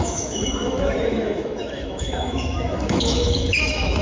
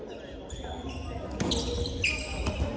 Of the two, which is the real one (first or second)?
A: second